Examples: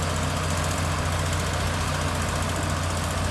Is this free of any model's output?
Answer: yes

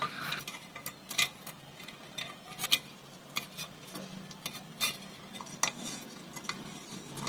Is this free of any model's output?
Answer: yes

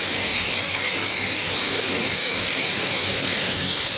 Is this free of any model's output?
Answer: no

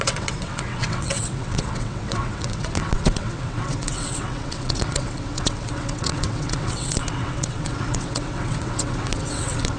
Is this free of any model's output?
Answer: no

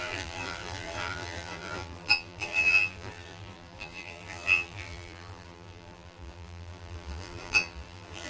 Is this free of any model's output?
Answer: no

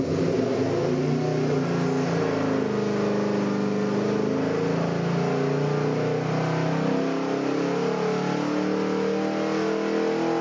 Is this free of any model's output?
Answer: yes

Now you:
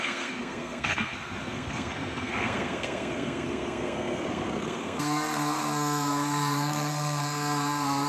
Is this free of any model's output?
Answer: no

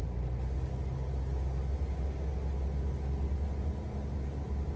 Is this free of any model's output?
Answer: yes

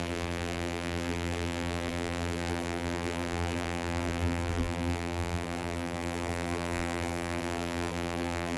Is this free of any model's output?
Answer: no